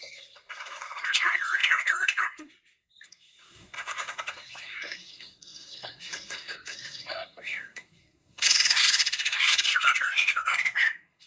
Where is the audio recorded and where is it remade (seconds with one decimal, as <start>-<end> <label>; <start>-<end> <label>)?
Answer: 0.0-11.3 remade